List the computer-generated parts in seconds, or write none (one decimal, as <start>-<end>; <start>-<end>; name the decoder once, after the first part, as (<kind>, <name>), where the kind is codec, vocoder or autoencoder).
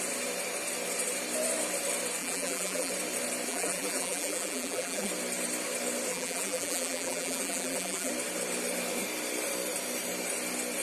2.2-2.9 (vocoder, BigVGAN v2); 3.5-5.1; 6.1-8.1